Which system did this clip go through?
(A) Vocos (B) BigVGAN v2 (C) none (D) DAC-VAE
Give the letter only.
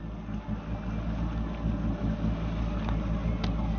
C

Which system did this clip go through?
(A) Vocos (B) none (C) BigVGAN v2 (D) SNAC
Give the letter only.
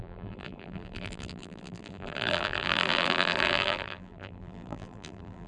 C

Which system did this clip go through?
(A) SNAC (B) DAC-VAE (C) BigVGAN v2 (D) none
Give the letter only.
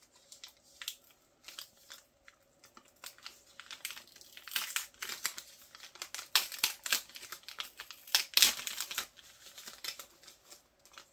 D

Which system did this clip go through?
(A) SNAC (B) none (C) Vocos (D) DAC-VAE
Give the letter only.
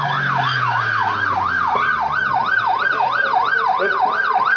B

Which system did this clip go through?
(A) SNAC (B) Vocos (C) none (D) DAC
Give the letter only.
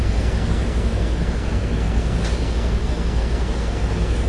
A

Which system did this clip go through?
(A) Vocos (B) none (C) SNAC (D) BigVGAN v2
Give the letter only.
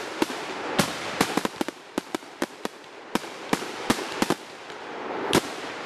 D